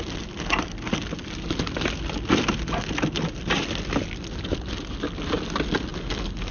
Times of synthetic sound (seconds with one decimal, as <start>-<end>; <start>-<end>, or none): none